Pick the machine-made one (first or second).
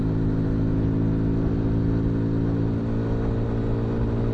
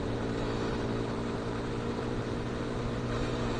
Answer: second